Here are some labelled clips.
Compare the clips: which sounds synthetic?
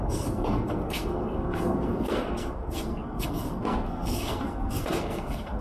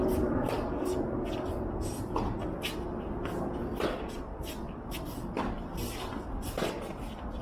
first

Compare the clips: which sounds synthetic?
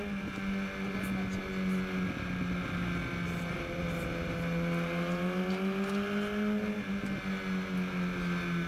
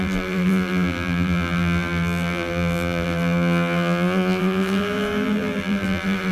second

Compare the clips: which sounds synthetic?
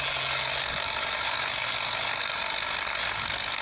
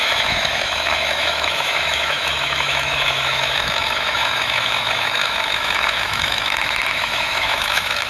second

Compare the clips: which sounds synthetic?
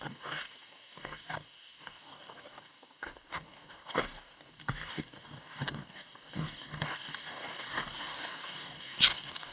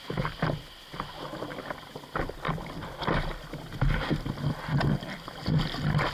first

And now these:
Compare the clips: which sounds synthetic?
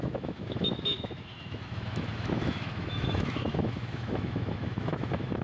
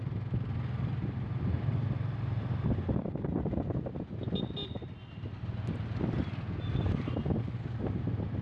first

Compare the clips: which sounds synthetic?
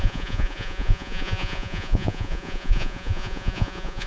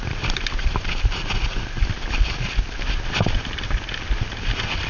first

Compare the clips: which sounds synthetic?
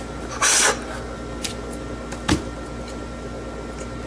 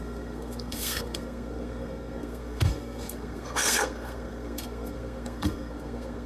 second